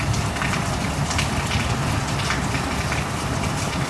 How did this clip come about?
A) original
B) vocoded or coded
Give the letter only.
A